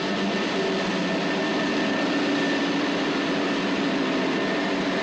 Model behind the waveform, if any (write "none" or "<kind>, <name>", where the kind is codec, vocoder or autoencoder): none